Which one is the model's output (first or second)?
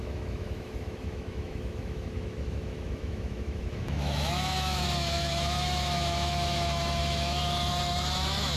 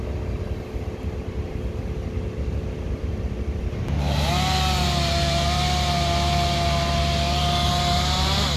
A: first